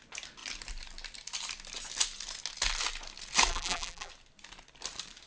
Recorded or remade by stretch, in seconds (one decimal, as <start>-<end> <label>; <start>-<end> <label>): 0.0-3.5 recorded; 3.5-4.1 remade; 4.1-5.3 recorded